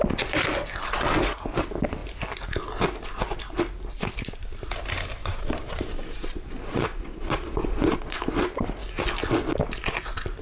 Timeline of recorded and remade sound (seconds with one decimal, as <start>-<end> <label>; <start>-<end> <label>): 0.0-5.2 recorded; 5.2-8.2 remade; 8.2-10.4 recorded